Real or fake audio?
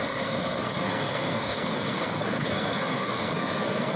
fake